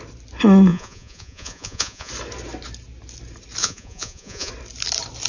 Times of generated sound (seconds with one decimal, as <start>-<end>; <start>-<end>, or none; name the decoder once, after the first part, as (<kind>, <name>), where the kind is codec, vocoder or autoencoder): 0.7-2.1 (vocoder, Vocos); 3.6-4.5